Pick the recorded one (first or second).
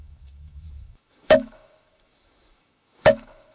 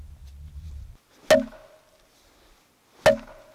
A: second